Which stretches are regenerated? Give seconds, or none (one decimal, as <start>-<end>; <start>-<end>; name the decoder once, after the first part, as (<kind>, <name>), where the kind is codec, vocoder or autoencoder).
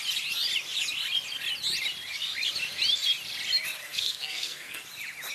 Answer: 3.8-4.8 (codec, SNAC)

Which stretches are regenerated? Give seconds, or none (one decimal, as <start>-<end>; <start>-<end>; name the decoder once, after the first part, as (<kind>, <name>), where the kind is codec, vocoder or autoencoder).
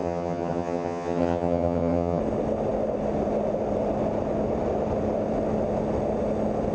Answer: 0.0-2.2 (vocoder, HiFi-GAN)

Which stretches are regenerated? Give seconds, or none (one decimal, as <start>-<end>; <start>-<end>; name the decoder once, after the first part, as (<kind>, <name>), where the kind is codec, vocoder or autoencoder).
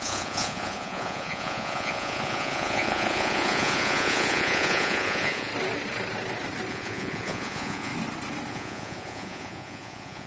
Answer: 0.0-5.5 (vocoder, Vocos); 6.7-7.9; 8.5-10.3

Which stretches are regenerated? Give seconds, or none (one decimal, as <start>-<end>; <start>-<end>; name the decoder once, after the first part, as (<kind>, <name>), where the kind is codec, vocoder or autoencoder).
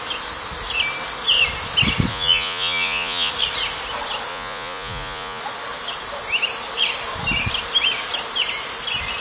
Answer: 2.1-3.3 (vocoder, Vocos); 4.3-5.4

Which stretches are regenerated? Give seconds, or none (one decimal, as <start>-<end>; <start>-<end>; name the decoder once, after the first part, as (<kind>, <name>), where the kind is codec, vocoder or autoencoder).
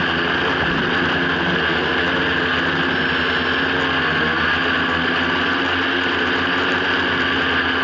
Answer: none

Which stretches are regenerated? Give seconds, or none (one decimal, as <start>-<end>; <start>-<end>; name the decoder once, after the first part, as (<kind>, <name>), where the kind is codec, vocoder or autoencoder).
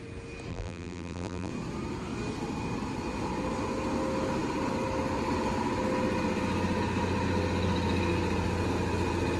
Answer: 0.5-1.5 (vocoder, BigVGAN v2)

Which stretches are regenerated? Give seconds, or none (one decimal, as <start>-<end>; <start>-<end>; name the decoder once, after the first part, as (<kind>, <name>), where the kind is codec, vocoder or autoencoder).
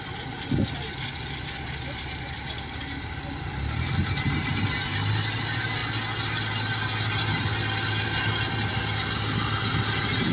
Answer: none